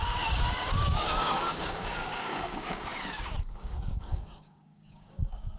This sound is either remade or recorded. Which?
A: remade